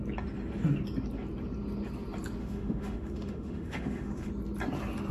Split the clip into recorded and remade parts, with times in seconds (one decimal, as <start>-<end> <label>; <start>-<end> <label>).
0.0-2.4 recorded; 2.4-4.3 remade; 4.3-5.1 recorded